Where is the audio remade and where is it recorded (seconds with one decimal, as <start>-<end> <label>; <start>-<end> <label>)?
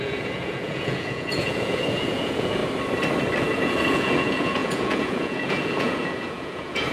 0.0-2.6 remade; 2.6-3.4 recorded; 3.4-6.9 remade